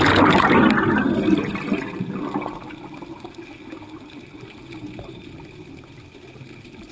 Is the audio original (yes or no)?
yes